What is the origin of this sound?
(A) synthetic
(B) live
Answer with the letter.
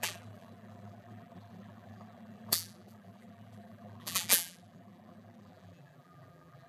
A